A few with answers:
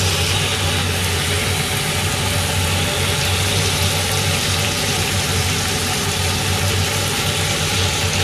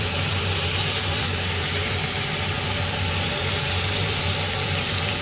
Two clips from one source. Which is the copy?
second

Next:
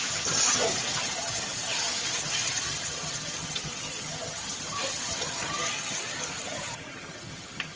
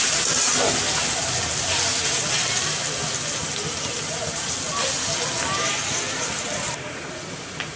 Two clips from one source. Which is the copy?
first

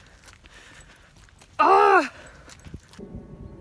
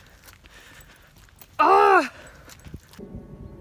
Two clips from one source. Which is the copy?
first